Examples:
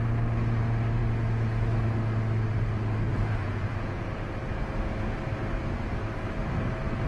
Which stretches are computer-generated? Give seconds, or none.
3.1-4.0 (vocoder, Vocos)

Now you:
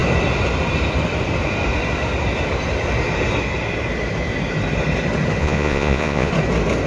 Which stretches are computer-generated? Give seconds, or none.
5.4-6.3 (vocoder, Vocos)

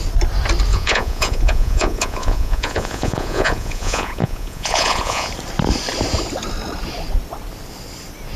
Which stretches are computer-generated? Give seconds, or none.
0.7-5.3 (vocoder, Vocos)

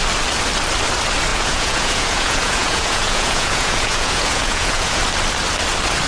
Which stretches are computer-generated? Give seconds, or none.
1.3-5.0 (vocoder, Vocos)

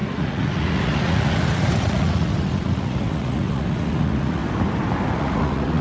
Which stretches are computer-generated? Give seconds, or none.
0.0-4.4 (vocoder, Vocos); 5.1-5.8